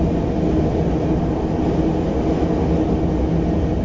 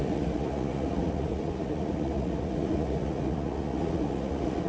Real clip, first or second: first